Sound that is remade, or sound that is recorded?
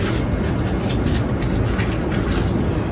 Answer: recorded